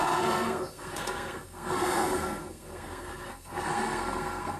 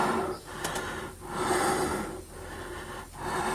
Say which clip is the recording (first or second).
second